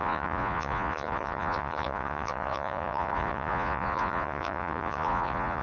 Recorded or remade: remade